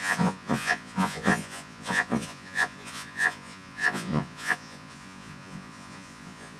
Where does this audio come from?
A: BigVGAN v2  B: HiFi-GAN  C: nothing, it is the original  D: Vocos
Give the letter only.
D